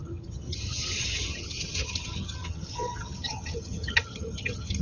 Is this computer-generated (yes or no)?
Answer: yes